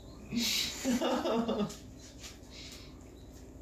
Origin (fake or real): real